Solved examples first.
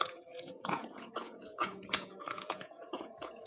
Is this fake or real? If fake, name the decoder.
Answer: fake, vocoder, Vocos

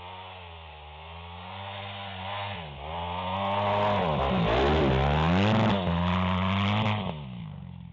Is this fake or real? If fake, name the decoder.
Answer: real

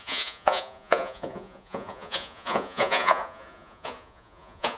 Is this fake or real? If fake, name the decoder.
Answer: fake, vocoder, Vocos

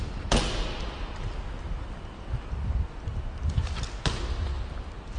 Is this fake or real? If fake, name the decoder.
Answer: real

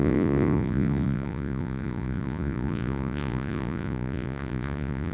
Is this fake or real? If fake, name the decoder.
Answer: fake, vocoder, Vocos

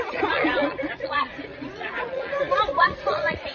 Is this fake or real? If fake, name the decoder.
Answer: fake, vocoder, Vocos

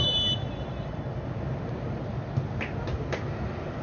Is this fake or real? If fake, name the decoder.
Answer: real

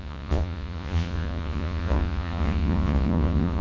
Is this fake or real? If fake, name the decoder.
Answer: fake, vocoder, Vocos